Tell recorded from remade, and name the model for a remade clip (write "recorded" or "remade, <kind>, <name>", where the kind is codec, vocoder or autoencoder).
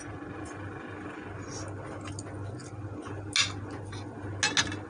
recorded